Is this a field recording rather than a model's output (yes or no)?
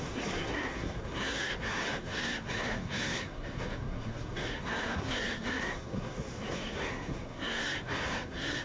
no